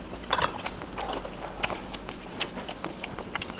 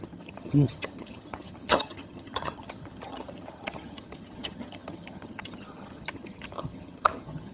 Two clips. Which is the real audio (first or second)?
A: first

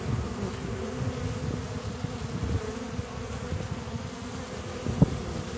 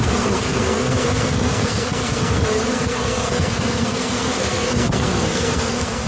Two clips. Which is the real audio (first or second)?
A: first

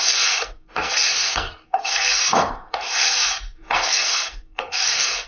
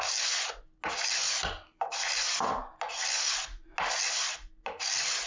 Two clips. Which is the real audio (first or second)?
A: second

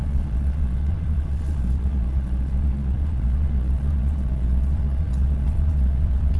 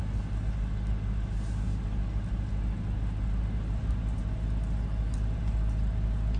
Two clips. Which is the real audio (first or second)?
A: second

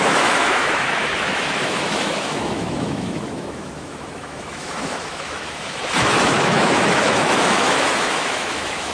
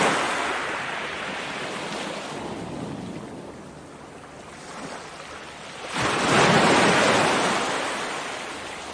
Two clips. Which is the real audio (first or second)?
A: second